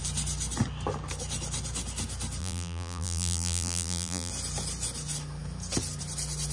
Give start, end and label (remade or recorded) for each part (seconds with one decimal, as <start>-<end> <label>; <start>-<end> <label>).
0.0-2.4 recorded; 2.4-4.3 remade; 4.3-6.5 recorded